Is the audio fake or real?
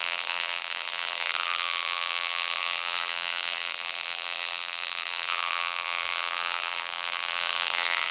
fake